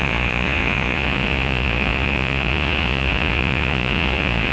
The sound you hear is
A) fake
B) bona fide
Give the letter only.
A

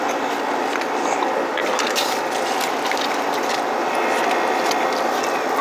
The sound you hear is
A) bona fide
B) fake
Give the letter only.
A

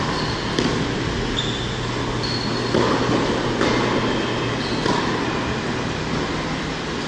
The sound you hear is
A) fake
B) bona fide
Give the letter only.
B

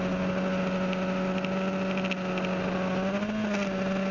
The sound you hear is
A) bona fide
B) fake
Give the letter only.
A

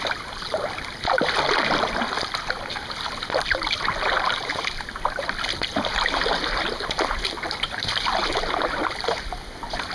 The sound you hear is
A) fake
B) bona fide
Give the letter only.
B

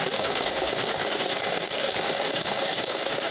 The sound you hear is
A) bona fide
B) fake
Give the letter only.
B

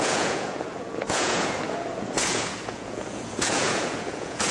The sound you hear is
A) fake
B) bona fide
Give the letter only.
A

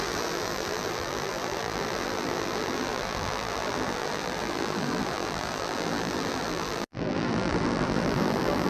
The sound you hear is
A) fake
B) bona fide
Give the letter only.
A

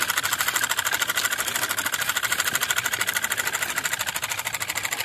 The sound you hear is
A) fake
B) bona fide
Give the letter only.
B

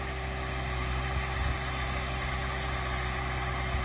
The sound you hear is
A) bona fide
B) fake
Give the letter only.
A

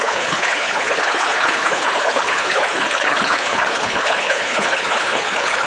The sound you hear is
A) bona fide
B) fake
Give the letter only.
B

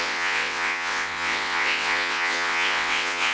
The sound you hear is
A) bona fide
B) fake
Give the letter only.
B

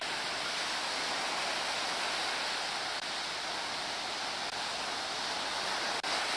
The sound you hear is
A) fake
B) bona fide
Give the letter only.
B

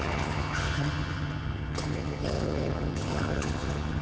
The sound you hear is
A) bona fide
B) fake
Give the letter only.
B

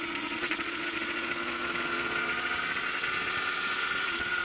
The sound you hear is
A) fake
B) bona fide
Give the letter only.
A